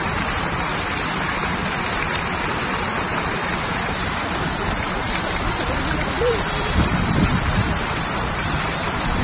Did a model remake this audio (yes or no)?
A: yes